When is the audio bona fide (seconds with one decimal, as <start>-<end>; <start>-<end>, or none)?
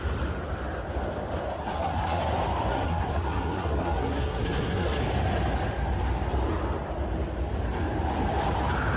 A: 0.0-1.6; 2.2-2.7; 5.0-9.0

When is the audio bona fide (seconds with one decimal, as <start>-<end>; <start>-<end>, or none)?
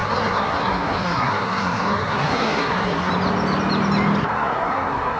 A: 3.1-4.2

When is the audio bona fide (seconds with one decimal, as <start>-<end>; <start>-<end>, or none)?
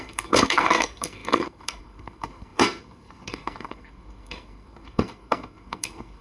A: none